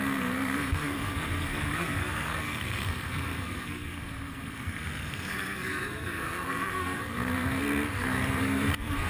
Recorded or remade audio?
remade